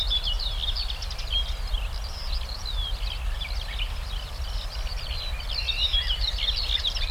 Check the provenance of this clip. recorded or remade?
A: recorded